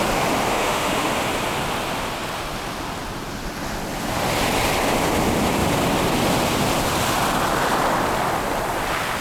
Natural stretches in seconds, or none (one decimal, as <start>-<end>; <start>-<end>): 0.0-0.5; 1.1-9.2

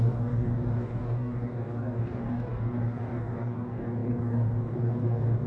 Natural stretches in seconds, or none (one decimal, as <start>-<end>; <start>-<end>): none

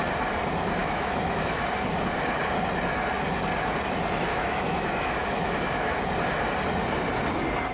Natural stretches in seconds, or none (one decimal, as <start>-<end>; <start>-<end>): 0.0-0.8; 1.6-4.3; 6.0-7.7

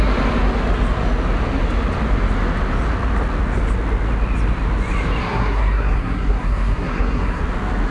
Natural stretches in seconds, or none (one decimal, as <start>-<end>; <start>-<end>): 0.0-5.2; 7.4-7.9

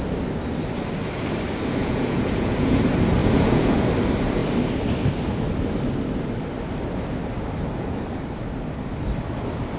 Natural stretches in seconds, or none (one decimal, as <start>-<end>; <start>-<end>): 0.0-1.8; 2.8-3.2; 3.9-9.8

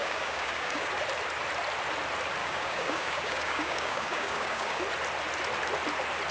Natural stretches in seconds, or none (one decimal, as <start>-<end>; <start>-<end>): 0.9-2.4; 4.8-6.3